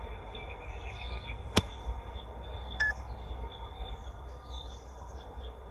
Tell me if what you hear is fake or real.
fake